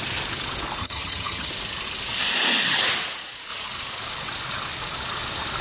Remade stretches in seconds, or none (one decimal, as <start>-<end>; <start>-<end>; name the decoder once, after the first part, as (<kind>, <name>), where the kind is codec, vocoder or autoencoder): 0.8-1.5 (vocoder, HiFi-GAN)